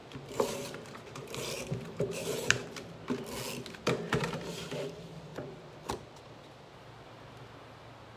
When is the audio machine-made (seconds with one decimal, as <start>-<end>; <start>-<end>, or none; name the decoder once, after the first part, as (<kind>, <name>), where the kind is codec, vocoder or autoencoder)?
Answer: 0.0-2.6 (vocoder, BigVGAN v2); 4.2-5.3